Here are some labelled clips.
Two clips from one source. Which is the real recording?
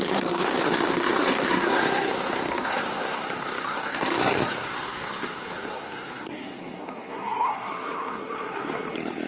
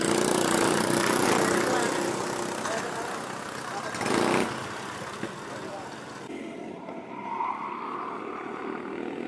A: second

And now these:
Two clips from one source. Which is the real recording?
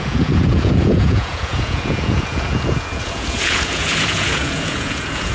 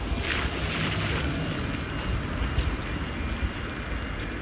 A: second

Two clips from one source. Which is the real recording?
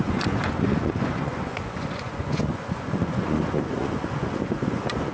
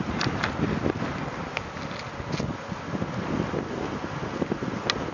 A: second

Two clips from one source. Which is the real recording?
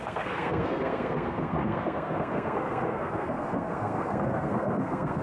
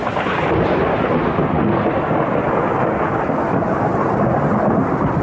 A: second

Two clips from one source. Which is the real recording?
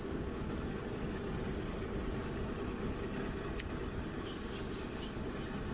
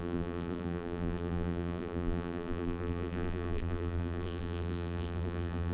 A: first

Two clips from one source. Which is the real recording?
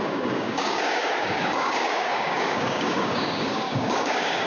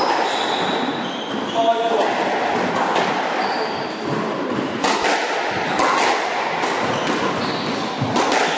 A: second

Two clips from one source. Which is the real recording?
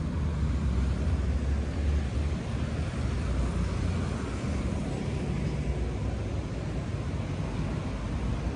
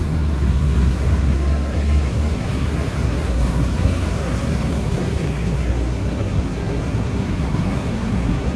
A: first